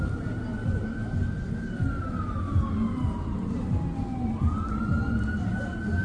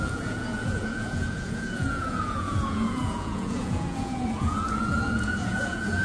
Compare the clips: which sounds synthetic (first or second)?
second